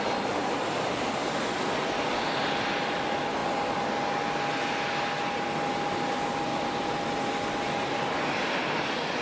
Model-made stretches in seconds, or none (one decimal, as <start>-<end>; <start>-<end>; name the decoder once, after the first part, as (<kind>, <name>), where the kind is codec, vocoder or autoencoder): none

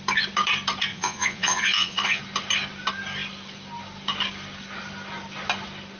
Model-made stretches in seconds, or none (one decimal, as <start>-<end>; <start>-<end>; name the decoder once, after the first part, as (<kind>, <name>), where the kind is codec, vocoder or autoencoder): 0.9-2.2 (vocoder, Vocos)

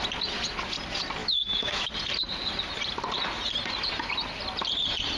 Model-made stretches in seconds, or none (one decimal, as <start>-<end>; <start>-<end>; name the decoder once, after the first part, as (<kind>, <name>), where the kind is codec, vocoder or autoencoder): 1.2-1.9 (autoencoder, DAC-VAE)

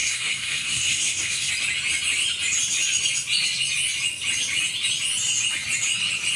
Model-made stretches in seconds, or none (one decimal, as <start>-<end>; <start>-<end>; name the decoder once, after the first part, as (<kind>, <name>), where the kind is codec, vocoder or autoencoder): 0.0-1.5 (codec, SNAC)

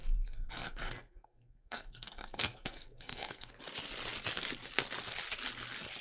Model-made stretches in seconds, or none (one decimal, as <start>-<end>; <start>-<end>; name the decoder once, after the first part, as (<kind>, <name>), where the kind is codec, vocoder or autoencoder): 0.0-3.6 (codec, SNAC)